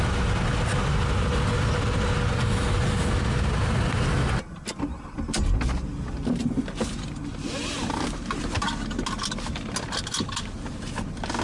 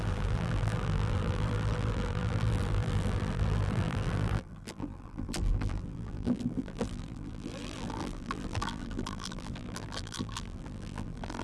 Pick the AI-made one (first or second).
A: second